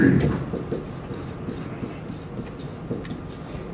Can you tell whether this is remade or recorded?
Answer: recorded